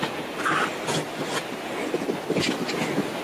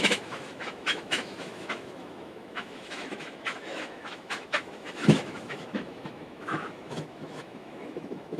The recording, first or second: first